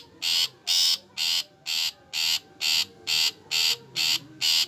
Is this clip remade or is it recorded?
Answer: recorded